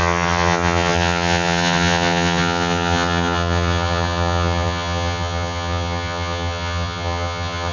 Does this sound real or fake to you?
fake